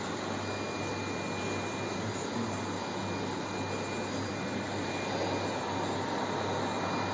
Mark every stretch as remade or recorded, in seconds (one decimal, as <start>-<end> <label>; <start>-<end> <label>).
0.0-7.1 recorded